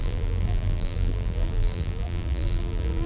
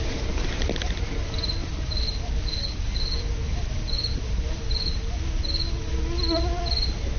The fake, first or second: first